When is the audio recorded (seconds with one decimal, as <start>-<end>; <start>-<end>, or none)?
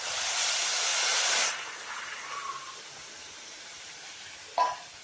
0.0-0.9; 2.0-3.0; 4.2-5.0